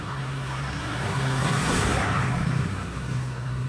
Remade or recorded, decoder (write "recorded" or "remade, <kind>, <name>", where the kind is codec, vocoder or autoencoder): remade, codec, SNAC